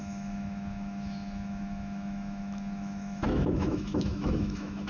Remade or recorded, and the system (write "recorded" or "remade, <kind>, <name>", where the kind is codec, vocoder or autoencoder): remade, autoencoder, DAC-VAE